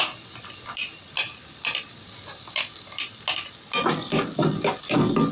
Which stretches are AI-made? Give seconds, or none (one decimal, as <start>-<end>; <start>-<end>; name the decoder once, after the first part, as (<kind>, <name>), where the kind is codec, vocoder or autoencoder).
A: none